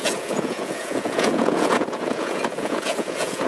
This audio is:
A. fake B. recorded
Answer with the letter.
A